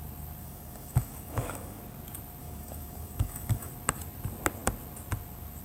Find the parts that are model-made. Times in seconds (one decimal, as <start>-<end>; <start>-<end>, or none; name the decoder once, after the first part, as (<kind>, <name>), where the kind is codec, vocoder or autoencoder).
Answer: 0.4-1.8 (codec, DAC); 2.4-3.7